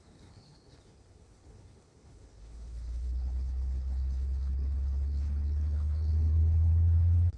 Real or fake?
fake